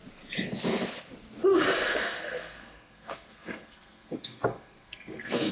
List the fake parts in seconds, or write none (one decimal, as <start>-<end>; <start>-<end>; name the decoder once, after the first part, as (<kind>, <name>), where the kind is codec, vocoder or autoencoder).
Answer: 1.9-5.5 (codec, SNAC)